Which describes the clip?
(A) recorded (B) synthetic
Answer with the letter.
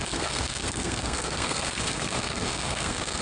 B